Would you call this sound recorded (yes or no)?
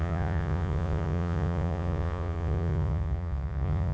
no